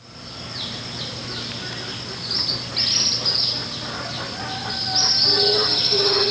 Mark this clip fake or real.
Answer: real